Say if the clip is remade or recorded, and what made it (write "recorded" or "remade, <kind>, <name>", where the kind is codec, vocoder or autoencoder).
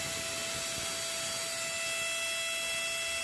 recorded